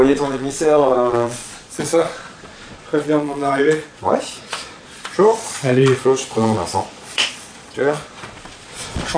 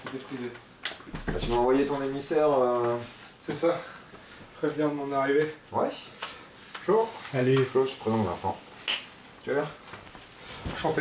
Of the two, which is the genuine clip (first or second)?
second